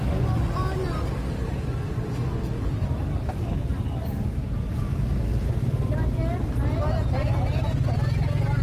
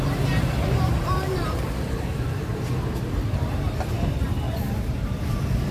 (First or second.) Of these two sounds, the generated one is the second